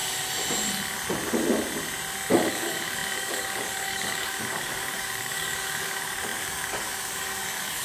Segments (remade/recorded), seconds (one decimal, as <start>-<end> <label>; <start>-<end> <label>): 0.0-2.5 recorded; 2.5-7.8 remade